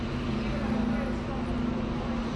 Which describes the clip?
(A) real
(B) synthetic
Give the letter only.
A